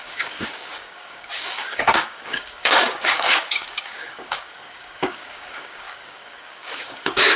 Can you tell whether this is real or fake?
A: fake